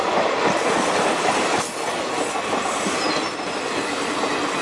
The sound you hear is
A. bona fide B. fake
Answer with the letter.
A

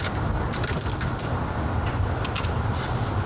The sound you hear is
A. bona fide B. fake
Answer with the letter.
A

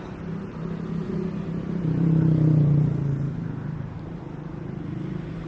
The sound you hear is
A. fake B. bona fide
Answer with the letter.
A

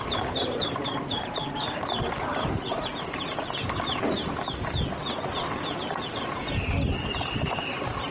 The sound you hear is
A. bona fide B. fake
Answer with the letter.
B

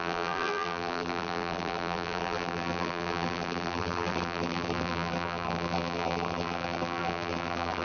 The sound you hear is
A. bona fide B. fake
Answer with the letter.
B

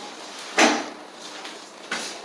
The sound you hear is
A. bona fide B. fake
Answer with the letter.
A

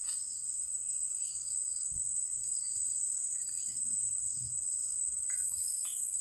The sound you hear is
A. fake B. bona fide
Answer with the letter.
A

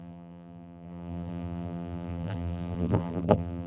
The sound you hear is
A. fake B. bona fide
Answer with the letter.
A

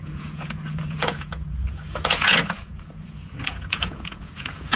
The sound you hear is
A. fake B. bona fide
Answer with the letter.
A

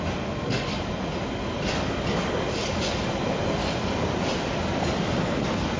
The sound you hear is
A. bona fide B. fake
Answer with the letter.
A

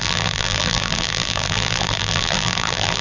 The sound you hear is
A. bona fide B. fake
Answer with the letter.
B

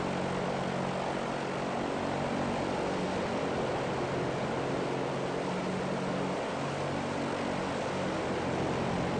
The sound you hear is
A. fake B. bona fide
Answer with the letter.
B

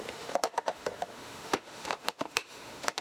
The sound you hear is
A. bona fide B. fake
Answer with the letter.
B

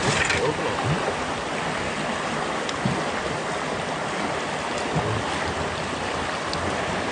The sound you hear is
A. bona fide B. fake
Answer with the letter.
A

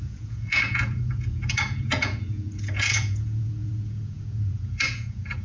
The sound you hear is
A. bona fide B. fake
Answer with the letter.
B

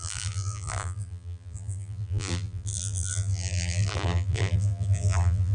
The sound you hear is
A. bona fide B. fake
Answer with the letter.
B